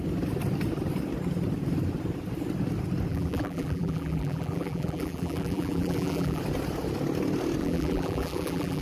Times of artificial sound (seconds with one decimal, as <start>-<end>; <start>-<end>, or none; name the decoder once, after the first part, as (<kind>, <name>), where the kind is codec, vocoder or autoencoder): 3.1-6.4 (vocoder, BigVGAN v2); 7.6-8.8